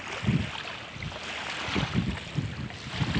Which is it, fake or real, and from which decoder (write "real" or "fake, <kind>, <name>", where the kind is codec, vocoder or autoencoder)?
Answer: real